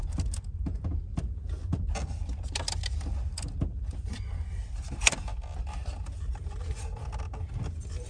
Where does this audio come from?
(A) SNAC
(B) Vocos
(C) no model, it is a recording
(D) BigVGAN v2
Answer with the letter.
C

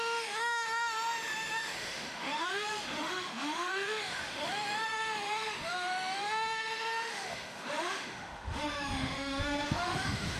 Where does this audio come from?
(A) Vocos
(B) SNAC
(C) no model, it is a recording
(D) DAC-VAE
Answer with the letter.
D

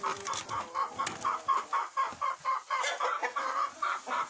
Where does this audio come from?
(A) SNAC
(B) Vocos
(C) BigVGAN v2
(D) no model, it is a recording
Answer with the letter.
D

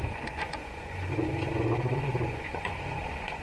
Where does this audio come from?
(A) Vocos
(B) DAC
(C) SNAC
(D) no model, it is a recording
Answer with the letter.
A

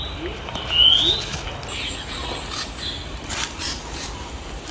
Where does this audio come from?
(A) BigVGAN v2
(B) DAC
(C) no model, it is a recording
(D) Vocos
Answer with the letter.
C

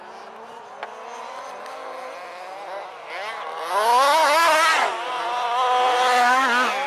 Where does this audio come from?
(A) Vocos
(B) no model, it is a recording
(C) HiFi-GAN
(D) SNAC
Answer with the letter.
B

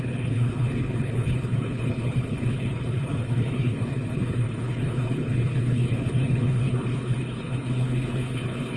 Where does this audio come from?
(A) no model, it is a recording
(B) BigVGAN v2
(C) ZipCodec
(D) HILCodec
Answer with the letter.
D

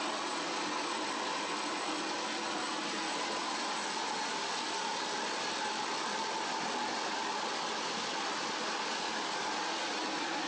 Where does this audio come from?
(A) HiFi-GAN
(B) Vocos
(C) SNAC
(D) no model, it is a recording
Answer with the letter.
D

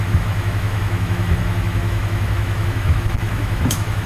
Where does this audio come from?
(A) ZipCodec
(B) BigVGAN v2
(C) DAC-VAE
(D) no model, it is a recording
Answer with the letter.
C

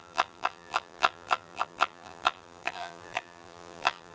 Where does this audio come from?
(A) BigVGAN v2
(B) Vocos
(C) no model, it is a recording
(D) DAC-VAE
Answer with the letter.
A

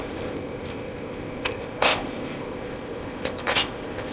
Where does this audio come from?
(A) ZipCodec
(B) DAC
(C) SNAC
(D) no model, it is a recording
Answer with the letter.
A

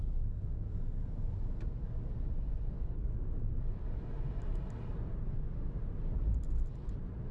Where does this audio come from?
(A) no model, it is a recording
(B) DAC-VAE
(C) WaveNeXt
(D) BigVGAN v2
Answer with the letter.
A